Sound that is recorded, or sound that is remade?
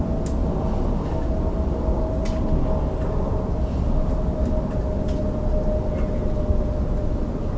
recorded